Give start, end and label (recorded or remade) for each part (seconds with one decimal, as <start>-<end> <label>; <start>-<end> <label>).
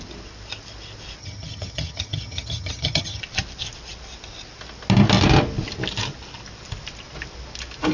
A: 0.0-1.2 recorded; 1.2-3.2 remade; 3.2-7.9 recorded